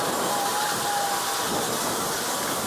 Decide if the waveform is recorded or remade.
recorded